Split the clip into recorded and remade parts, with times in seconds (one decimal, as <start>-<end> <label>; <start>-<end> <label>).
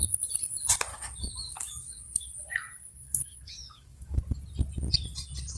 0.0-0.9 recorded; 0.9-2.3 remade; 2.3-2.9 recorded; 2.9-4.2 remade; 4.2-5.6 recorded